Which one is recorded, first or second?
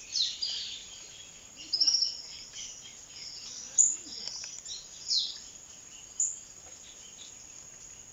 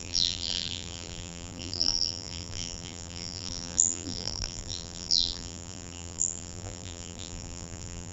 first